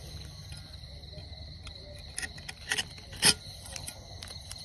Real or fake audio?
real